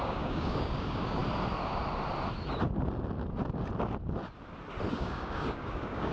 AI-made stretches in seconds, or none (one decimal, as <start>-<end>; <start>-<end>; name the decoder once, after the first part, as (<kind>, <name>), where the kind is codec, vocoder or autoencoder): 0.0-1.2 (codec, DAC); 4.9-6.1